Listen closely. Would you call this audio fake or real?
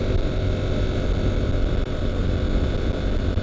real